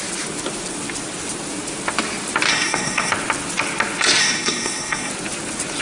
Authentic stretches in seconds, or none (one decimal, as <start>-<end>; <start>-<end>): 0.0-2.5; 3.1-4.2; 5.1-5.8